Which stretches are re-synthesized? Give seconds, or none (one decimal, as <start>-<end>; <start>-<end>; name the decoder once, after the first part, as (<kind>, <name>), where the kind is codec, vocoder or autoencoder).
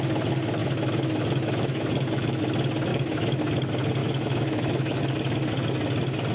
0.6-2.4 (autoencoder, DAC-VAE); 2.9-3.4; 4.0-5.0